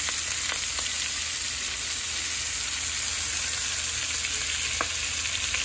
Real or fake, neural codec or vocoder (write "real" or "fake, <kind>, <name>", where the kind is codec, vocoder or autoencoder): real